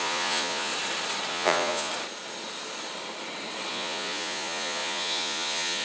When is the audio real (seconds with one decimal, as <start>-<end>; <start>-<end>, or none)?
0.7-1.3; 1.9-3.7